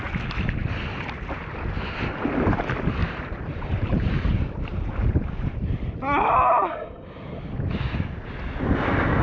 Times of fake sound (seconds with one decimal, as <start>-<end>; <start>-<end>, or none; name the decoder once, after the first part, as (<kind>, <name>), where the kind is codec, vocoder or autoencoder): 3.0-5.5 (vocoder, BigVGAN v2)